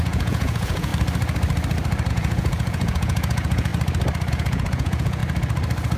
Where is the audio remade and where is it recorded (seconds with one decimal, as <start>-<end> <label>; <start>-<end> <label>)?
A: 0.0-0.9 remade; 0.9-2.1 recorded; 2.1-3.7 remade; 3.7-4.3 recorded; 4.3-5.2 remade; 5.2-6.0 recorded